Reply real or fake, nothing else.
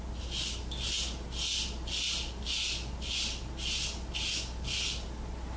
real